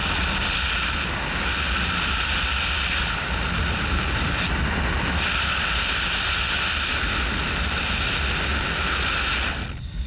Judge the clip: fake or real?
real